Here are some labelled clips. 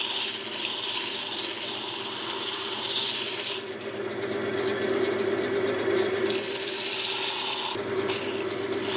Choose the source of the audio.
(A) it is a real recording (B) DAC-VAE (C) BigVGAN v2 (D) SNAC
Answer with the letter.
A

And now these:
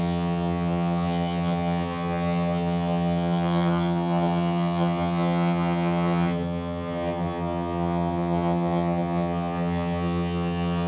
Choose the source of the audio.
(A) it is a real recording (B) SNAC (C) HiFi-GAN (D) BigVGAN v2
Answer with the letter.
C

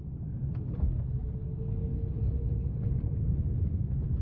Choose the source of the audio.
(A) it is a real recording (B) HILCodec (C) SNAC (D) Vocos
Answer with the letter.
A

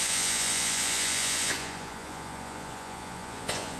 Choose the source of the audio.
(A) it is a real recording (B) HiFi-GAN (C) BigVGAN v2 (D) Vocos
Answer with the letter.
D